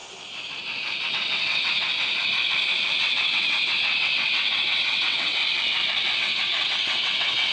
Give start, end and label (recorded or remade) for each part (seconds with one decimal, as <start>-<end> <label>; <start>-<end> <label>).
0.0-1.1 recorded; 1.1-1.9 remade; 1.9-3.0 recorded; 3.0-5.4 remade; 5.4-6.2 recorded; 6.2-7.5 remade